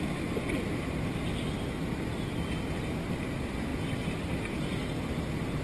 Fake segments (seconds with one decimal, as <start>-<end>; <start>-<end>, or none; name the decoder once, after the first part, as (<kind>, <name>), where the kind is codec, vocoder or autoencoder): none